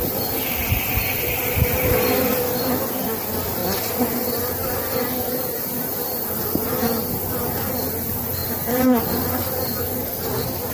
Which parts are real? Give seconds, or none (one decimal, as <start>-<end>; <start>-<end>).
0.0-10.7